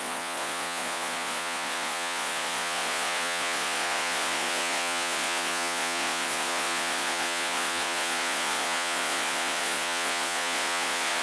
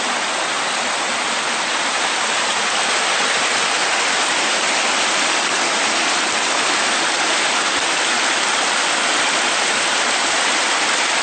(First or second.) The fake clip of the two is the first